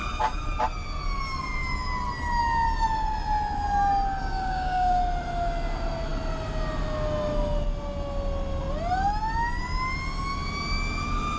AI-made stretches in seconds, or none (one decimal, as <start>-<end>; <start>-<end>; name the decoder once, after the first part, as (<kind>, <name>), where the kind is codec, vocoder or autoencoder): 4.2-5.0 (codec, DAC)